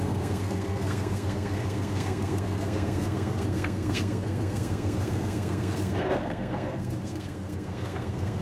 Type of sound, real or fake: fake